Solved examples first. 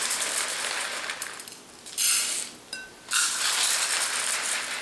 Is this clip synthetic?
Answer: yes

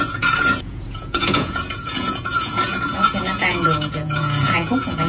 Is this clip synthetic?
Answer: yes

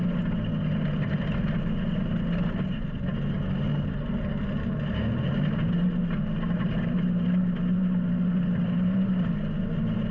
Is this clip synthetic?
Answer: no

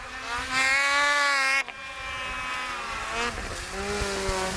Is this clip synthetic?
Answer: no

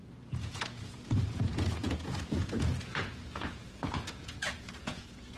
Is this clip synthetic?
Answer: yes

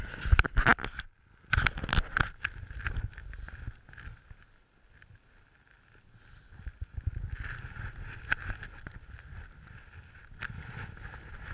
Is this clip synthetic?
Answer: no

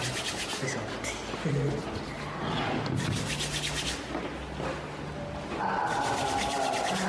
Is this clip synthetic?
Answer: no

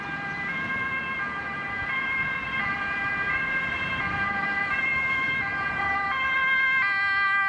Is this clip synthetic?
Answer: no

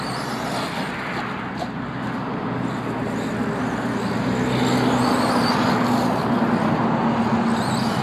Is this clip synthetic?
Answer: no